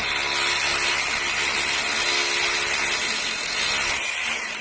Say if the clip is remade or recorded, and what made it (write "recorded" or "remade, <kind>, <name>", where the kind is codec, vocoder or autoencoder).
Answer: recorded